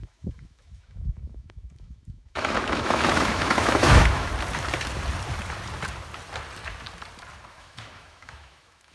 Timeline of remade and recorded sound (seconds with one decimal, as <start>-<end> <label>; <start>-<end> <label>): 0.0-4.3 remade; 4.3-7.5 recorded; 7.5-8.9 remade